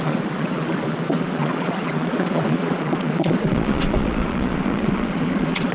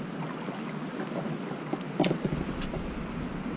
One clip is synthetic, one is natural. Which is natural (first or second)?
second